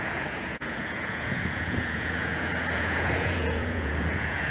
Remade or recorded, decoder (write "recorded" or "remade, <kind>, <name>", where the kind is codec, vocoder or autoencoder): remade, vocoder, Vocos